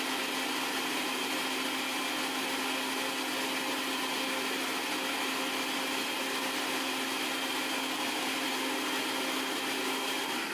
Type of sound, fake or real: real